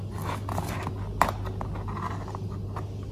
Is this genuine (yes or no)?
yes